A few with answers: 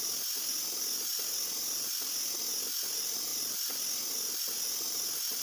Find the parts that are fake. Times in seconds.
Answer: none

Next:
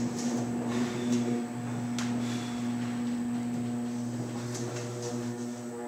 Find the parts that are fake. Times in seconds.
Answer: none

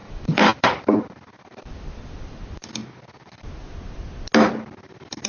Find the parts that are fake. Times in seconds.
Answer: 0.0-2.8 (vocoder, BigVGAN v2); 4.5-5.3

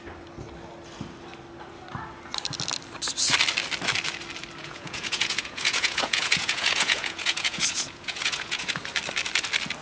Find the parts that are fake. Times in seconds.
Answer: 4.6-8.8 (vocoder, Vocos)